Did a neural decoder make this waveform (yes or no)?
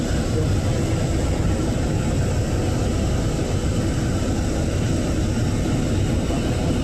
no